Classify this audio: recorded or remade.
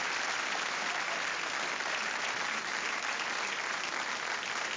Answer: recorded